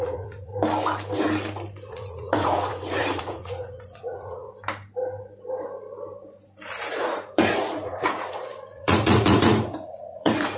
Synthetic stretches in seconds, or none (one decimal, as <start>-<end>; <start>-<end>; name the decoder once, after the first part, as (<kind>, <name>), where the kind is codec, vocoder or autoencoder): 0.0-0.5 (vocoder, Vocos); 1.9-4.5; 6.9-10.6